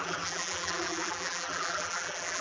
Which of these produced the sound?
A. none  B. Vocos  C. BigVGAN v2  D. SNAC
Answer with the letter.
C